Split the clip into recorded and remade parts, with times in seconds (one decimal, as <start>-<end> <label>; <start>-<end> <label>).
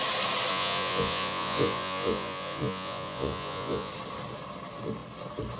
0.0-0.5 recorded; 0.5-3.9 remade; 3.9-5.6 recorded